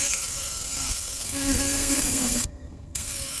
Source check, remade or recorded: remade